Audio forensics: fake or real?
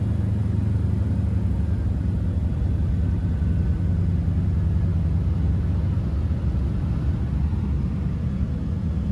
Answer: real